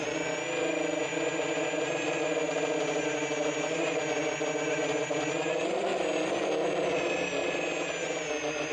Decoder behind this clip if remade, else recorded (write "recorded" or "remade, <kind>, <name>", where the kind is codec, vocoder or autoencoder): recorded